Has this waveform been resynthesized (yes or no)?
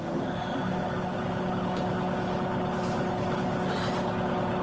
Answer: no